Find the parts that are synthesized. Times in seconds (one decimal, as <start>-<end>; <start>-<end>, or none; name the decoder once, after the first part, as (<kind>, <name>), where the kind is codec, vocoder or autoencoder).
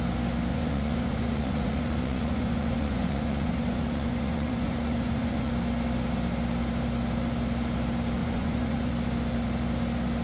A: 0.5-5.5 (vocoder, Vocos); 8.2-8.9